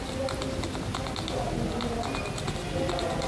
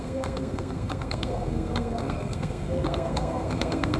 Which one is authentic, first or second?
first